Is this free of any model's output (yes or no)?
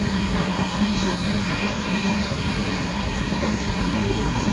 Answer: no